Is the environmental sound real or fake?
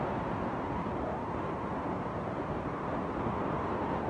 real